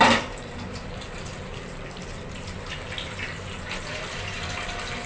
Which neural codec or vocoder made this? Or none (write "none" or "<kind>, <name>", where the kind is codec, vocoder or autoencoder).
vocoder, BigVGAN v2